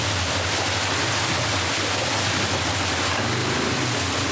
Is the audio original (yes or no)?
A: yes